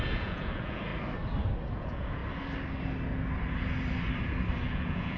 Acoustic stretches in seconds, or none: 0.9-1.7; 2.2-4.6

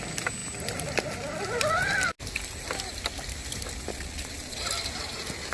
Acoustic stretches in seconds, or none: 0.0-3.9; 4.7-5.5

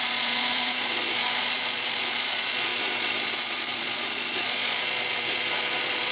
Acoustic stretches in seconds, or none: none

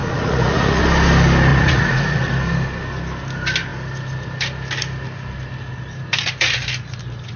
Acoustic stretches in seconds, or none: 0.8-1.5; 2.3-7.4

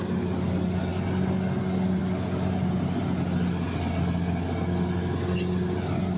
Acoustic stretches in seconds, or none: 0.0-6.2

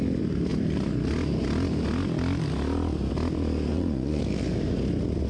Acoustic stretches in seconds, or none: 0.0-3.7; 4.2-5.3